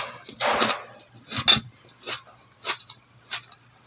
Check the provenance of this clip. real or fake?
real